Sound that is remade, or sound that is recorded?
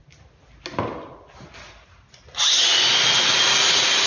recorded